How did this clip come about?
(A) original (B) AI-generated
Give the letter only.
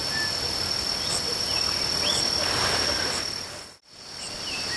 A